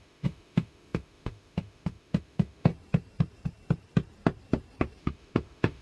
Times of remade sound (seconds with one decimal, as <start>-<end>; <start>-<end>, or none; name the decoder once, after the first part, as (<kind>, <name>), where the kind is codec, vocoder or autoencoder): 0.0-2.7 (autoencoder, DAC-VAE); 5.0-5.8